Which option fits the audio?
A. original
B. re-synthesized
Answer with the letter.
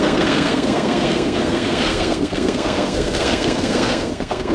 B